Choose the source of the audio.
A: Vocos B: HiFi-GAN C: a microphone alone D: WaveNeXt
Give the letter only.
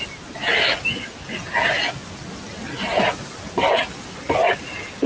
C